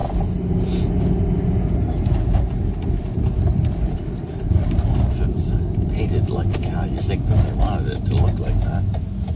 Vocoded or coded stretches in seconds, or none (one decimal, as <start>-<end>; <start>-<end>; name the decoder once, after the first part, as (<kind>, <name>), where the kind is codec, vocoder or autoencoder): 3.1-7.6 (vocoder, BigVGAN v2)